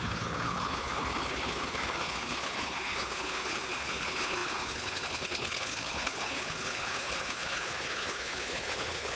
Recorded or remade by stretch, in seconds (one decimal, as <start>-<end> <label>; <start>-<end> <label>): 0.0-9.2 remade